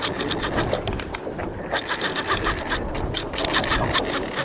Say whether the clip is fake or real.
real